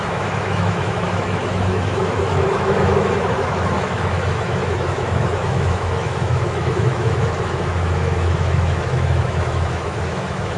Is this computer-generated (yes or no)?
yes